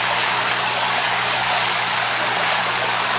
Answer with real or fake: fake